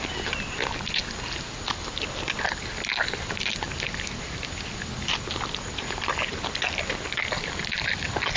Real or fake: real